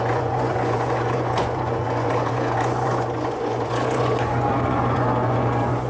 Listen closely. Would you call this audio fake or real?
fake